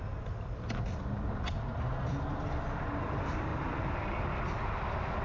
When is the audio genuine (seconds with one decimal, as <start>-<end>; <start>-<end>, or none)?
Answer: 0.0-3.5; 4.2-5.2